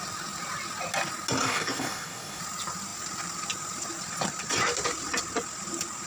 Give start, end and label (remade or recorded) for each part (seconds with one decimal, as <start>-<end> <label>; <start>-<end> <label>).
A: 0.0-1.4 recorded; 1.4-2.4 remade; 2.4-6.1 recorded

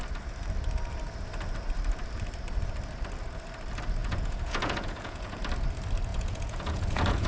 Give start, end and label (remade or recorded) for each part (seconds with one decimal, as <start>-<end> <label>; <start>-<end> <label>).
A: 0.0-4.0 recorded; 4.0-5.4 remade; 5.4-6.1 recorded; 6.1-7.3 remade